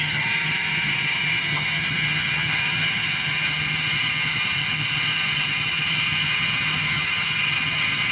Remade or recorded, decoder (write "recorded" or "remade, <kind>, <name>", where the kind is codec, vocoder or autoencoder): remade, vocoder, HiFi-GAN